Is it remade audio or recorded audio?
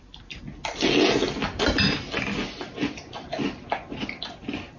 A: recorded